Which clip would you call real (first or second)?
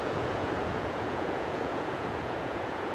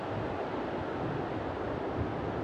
second